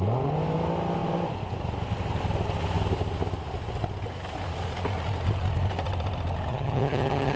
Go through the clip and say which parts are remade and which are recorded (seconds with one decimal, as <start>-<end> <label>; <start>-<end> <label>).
0.0-6.5 recorded; 6.5-7.4 remade